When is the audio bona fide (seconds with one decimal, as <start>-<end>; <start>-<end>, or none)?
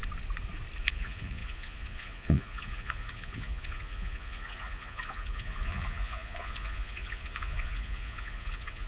0.0-0.8